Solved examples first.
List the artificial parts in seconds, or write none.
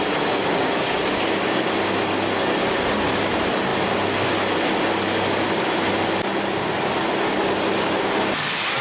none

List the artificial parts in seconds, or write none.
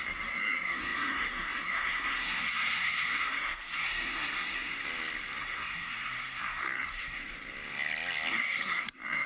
0.0-4.7 (codec, SNAC); 5.4-7.2; 8.3-9.3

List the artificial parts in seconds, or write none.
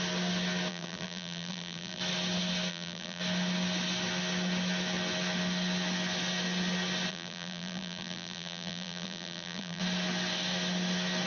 0.7-2.0 (vocoder, BigVGAN v2); 2.7-3.2; 7.1-9.8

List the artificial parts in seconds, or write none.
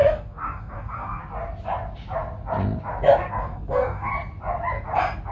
0.0-1.2 (codec, DAC); 3.3-4.1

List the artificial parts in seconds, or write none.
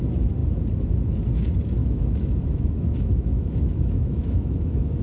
1.8-5.0 (autoencoder, DAC-VAE)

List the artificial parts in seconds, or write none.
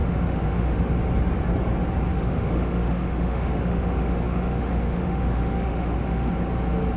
0.0-1.0 (autoencoder, DAC-VAE); 2.1-6.3